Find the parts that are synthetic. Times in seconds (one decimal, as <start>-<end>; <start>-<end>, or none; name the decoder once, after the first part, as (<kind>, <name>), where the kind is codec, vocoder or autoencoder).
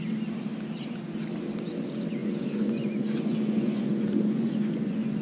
2.2-5.2 (vocoder, Vocos)